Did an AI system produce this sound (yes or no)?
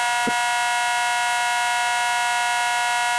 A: no